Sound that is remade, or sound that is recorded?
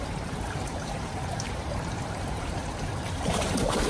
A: remade